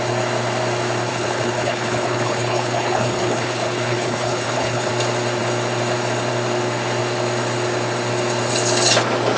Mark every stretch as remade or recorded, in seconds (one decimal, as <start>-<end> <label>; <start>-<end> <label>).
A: 0.0-1.1 recorded; 1.1-4.9 remade; 4.9-9.4 recorded